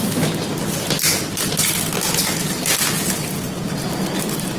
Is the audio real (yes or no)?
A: yes